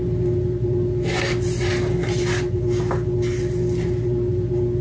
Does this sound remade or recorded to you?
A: recorded